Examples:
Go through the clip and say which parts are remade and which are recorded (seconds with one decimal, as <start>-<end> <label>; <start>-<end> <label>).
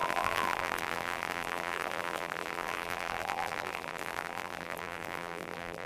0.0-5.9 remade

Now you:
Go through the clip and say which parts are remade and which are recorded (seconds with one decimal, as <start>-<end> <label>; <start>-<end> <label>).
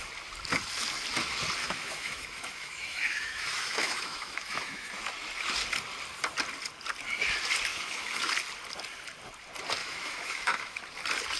0.0-1.6 recorded; 1.6-4.9 remade; 4.9-7.7 recorded; 7.7-8.3 remade; 8.3-9.8 recorded; 9.8-10.8 remade; 10.8-11.4 recorded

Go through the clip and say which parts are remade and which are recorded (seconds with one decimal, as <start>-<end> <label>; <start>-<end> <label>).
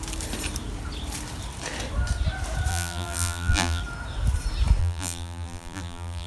0.0-2.7 recorded; 2.7-3.8 remade; 3.8-4.8 recorded; 4.8-6.3 remade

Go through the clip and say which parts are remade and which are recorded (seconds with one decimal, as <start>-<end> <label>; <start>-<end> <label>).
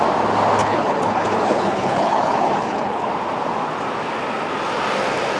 0.0-0.6 recorded; 0.6-3.1 remade; 3.1-5.4 recorded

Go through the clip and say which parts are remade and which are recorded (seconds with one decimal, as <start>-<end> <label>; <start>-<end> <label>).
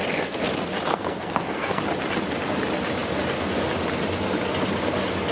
0.0-0.9 recorded; 0.9-1.8 remade; 1.8-5.3 recorded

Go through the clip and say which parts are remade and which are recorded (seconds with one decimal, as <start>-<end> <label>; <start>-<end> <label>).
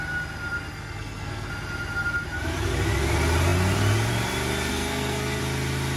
0.0-0.7 recorded; 0.7-1.5 remade; 1.5-4.7 recorded; 4.7-5.4 remade; 5.4-6.0 recorded